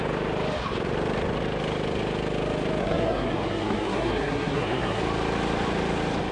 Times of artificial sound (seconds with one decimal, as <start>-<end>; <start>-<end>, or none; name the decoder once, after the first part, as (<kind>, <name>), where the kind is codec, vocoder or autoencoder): 2.8-5.0 (codec, SNAC)